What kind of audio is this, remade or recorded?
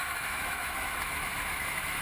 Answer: remade